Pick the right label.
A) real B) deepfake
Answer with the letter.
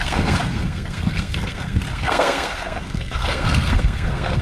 B